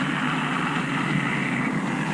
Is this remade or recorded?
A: recorded